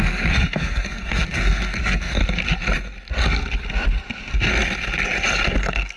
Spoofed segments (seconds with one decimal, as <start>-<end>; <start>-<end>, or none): 0.0-2.2; 5.6-6.0